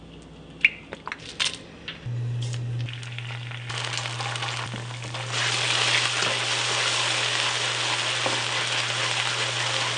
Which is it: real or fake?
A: real